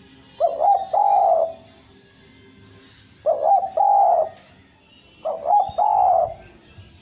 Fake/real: real